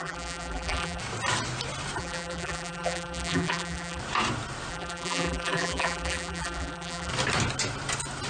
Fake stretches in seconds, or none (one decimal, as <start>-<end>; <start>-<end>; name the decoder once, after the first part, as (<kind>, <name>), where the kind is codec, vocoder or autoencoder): 0.0-1.0 (vocoder, BigVGAN v2); 2.0-4.0; 4.7-7.1